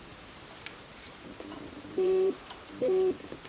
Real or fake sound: fake